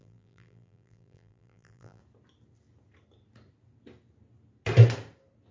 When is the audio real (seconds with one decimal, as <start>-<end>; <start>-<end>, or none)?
2.0-5.5